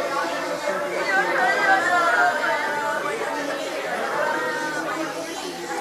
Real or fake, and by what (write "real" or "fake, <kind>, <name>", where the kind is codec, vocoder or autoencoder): real